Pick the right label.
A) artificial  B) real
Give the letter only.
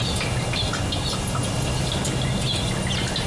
B